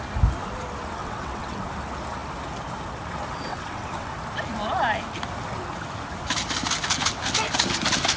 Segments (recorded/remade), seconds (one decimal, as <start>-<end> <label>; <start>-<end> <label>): 0.0-1.0 recorded; 1.0-1.6 remade; 1.6-3.5 recorded; 3.5-4.1 remade; 4.1-8.2 recorded